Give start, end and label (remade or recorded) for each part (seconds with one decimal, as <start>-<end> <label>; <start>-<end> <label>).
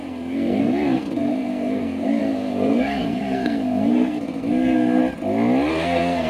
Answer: 0.0-5.0 remade; 5.0-5.7 recorded; 5.7-6.3 remade